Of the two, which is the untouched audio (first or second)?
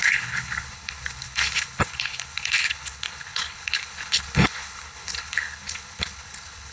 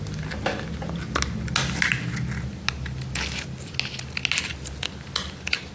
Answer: second